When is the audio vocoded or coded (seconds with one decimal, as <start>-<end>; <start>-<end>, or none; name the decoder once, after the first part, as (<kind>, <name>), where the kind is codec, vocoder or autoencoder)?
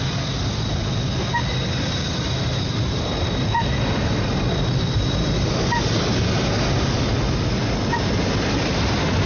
1.6-5.5 (vocoder, BigVGAN v2)